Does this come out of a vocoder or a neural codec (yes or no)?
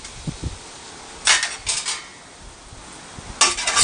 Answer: no